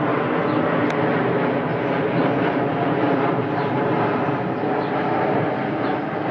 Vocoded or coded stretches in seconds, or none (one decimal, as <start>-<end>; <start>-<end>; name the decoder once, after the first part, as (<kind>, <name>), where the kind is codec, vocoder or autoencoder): 1.7-3.2 (vocoder, BigVGAN v2)